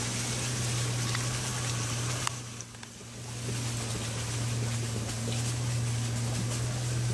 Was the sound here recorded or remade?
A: recorded